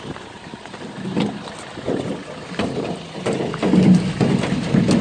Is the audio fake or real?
real